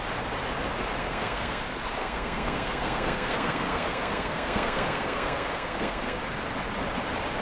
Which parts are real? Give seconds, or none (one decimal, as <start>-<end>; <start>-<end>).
0.0-1.0; 1.6-2.0; 6.2-7.4